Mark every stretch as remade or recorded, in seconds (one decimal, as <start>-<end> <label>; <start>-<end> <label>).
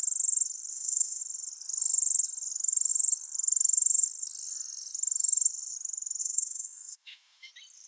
0.0-0.7 recorded; 0.7-1.2 remade; 1.2-6.2 recorded; 6.2-7.5 remade; 7.5-7.9 recorded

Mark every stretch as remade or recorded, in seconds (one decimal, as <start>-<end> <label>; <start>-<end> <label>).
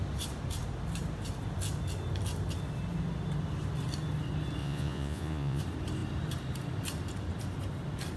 0.0-4.6 recorded; 4.6-5.6 remade; 5.6-8.2 recorded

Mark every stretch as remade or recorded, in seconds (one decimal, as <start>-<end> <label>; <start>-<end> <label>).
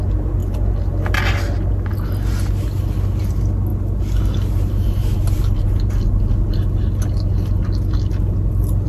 0.0-8.9 recorded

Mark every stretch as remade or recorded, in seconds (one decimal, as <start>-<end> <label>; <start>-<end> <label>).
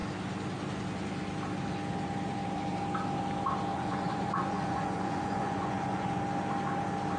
0.0-3.7 recorded; 3.7-6.2 remade; 6.2-7.2 recorded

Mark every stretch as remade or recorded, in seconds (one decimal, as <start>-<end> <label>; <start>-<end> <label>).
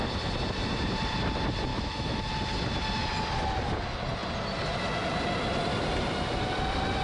0.0-1.7 recorded; 1.7-2.2 remade; 2.2-7.0 recorded